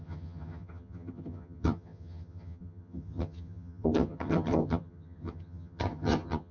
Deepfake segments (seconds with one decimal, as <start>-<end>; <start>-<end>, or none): 0.0-6.5

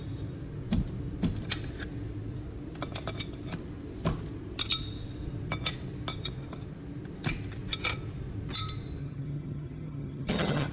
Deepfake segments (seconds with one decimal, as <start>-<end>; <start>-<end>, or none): 9.0-10.7

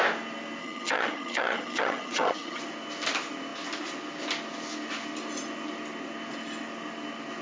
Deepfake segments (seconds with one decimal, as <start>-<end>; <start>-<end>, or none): 0.6-2.6

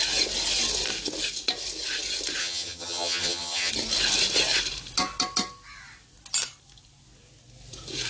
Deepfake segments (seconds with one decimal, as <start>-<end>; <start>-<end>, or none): 2.4-3.7